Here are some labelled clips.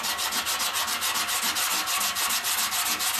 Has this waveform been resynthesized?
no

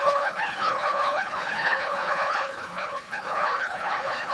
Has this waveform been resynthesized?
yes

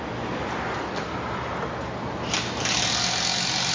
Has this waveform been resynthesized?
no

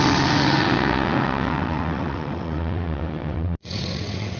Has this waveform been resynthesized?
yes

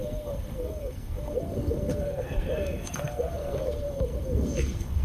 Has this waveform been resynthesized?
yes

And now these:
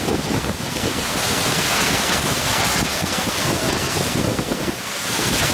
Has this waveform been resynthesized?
yes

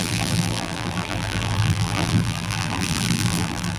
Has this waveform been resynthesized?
yes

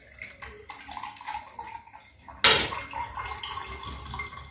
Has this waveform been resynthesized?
no